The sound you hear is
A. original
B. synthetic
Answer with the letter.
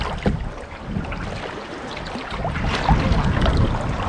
A